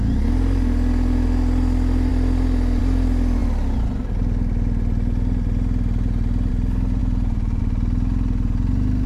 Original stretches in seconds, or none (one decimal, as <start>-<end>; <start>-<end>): 0.0-7.0; 7.6-9.1